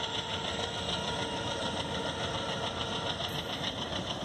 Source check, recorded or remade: remade